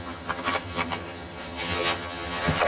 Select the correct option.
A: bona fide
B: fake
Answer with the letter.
B